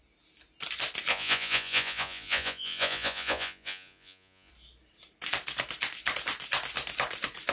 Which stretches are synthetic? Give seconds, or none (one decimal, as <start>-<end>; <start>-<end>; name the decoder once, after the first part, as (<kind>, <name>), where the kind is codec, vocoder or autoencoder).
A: 1.1-4.5 (vocoder, Vocos)